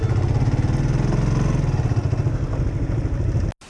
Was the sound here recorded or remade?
recorded